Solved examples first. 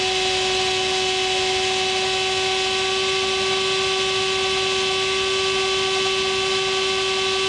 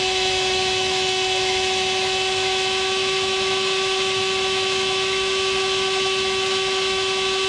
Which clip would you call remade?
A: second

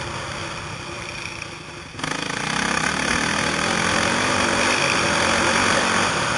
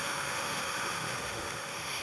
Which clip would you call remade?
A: second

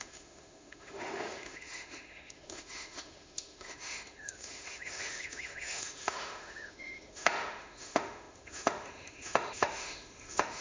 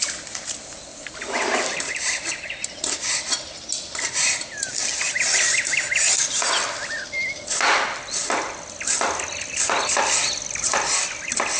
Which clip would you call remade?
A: first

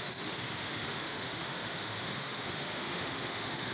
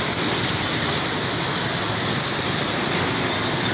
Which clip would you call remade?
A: first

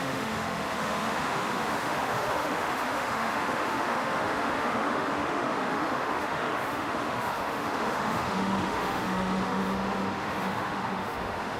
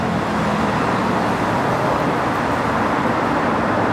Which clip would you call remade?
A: first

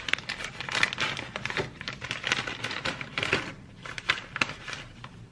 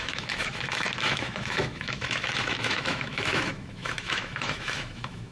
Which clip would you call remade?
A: second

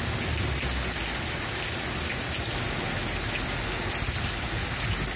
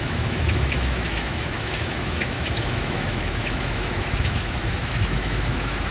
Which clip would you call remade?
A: second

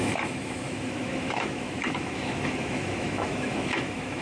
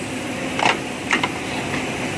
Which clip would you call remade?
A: first